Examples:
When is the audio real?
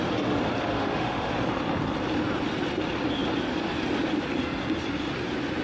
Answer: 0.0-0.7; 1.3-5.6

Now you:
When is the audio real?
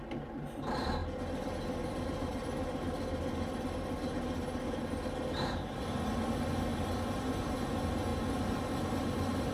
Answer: 0.0-6.7; 7.4-9.5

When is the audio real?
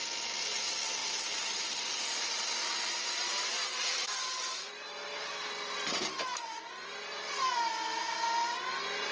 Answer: 0.0-1.0; 2.0-3.6; 8.7-9.1